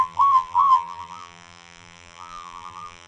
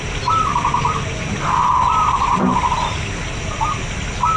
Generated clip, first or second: first